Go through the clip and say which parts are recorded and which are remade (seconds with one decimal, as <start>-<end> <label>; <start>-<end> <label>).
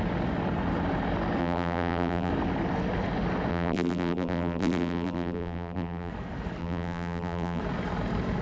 0.0-1.4 recorded; 1.4-2.3 remade; 2.3-3.5 recorded; 3.5-6.1 remade; 6.1-6.6 recorded; 6.6-7.6 remade; 7.6-8.4 recorded